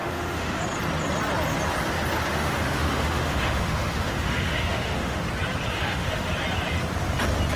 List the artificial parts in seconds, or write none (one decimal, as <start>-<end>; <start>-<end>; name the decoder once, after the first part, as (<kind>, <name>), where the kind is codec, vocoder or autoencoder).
0.0-0.6 (autoencoder, DAC-VAE); 2.3-5.2; 5.7-6.3